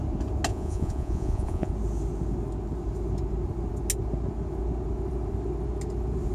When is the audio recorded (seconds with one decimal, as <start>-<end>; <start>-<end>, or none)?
0.0-0.5; 1.7-6.3